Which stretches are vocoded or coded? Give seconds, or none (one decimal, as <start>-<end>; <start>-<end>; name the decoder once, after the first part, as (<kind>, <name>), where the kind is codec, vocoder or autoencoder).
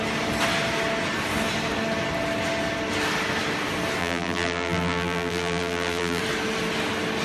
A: 4.0-6.2 (vocoder, BigVGAN v2)